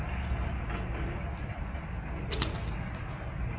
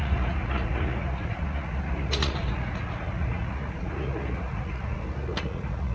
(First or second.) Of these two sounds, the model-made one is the second